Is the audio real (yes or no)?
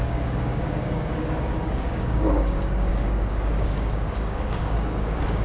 no